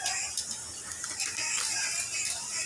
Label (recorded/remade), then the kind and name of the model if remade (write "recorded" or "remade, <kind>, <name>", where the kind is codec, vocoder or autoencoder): recorded